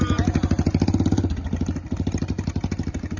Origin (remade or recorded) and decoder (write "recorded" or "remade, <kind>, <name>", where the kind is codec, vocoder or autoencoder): recorded